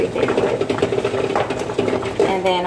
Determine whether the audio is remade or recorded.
recorded